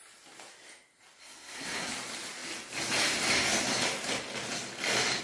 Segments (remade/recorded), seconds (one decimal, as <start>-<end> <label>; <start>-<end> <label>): 0.0-1.2 recorded; 1.2-1.9 remade; 1.9-5.2 recorded